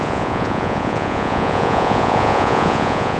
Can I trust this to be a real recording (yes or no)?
no